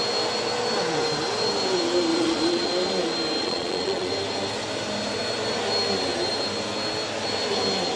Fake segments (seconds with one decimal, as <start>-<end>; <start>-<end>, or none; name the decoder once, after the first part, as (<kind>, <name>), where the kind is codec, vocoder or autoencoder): 2.1-2.7 (vocoder, Vocos); 3.4-4.1